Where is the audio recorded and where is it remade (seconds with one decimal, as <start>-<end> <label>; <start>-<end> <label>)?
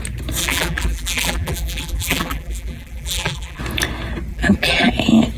0.0-0.4 recorded; 0.4-3.6 remade; 3.6-4.3 recorded; 4.3-4.9 remade; 4.9-5.4 recorded